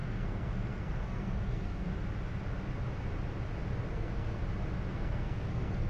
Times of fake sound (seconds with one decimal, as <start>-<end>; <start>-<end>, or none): 0.0-1.9; 3.9-4.4; 4.9-5.9